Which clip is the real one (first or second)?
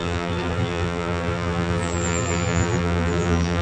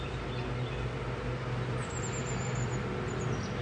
second